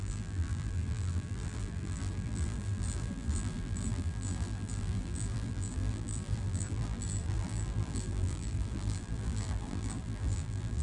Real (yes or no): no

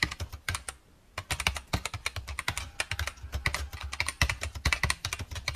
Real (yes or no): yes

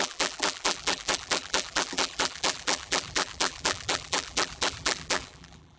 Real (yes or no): no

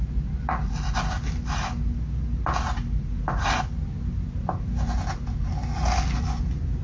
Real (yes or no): yes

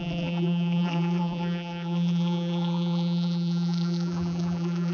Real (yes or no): no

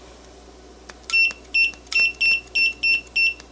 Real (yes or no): yes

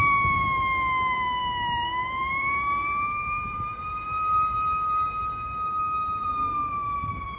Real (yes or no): no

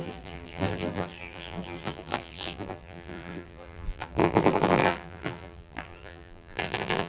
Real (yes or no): no